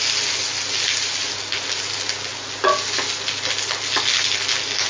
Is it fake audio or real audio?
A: real